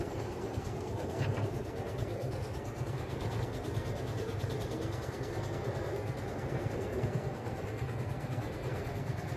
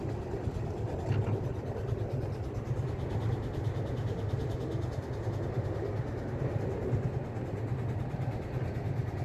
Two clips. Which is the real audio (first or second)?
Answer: second